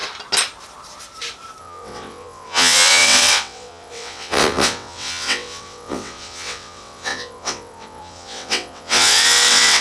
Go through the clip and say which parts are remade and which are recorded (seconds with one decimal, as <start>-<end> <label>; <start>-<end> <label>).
0.0-1.6 recorded; 1.6-9.8 remade